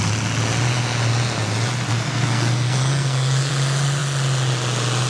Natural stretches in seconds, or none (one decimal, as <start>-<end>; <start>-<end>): 0.0-1.9; 3.5-5.1